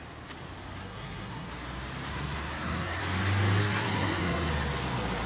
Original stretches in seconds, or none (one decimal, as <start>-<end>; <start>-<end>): 0.0-0.8; 1.5-2.1; 3.0-3.6; 4.5-5.3